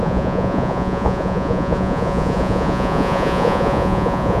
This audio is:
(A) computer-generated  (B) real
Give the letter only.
A